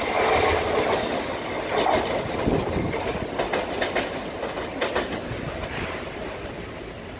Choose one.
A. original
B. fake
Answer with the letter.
A